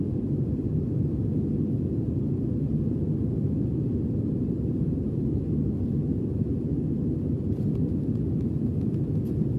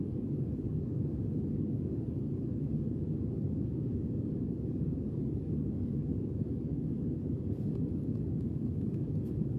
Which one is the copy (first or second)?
second